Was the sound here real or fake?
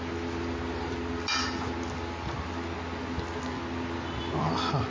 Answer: real